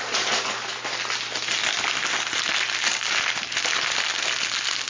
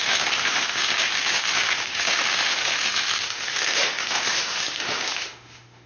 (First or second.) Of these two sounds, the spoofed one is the second